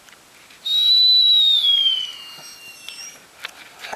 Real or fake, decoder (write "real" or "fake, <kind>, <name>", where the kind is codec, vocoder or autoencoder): real